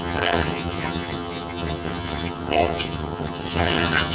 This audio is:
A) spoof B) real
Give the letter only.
A